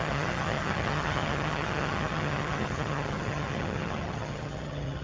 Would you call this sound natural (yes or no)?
no